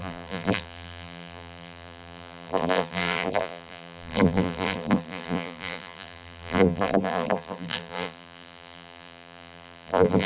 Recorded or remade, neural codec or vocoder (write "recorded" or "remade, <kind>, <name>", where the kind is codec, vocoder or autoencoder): remade, vocoder, BigVGAN v2